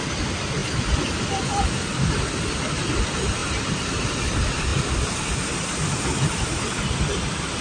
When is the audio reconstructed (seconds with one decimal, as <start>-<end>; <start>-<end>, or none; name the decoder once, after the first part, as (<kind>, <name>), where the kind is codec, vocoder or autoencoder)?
3.4-4.2 (vocoder, BigVGAN v2)